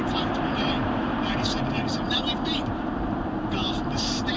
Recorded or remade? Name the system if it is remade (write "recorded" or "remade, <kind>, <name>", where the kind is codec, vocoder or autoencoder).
remade, vocoder, BigVGAN v2